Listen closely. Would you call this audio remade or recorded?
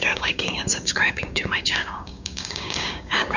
remade